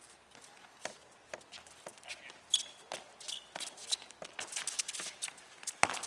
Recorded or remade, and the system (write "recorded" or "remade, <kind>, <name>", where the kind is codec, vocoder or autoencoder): recorded